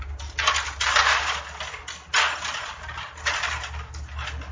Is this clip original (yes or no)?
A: yes